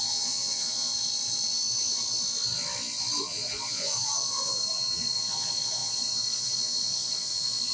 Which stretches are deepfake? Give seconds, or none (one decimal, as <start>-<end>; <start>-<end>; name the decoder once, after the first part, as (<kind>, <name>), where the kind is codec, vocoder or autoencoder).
0.0-0.9 (vocoder, Vocos); 3.2-7.7